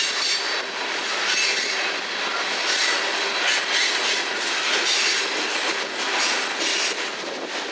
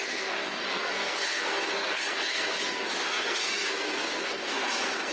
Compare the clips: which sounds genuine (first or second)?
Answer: first